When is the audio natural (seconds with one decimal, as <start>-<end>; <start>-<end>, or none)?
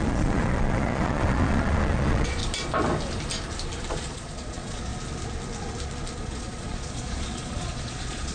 2.4-3.9; 4.9-6.2